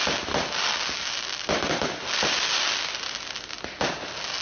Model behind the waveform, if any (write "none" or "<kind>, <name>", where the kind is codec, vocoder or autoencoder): none